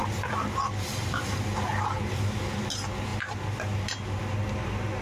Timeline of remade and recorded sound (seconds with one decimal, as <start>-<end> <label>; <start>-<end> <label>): 0.0-2.6 remade; 2.6-5.0 recorded